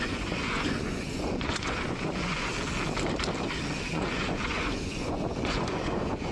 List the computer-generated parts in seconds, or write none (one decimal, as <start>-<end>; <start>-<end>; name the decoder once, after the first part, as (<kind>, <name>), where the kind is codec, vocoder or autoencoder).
0.0-2.5 (vocoder, Vocos); 3.9-6.3